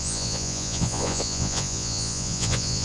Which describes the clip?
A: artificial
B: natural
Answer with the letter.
A